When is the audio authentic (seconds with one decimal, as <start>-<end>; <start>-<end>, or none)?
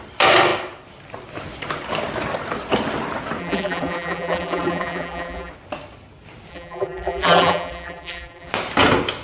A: 0.0-3.4; 5.5-6.5; 8.5-9.2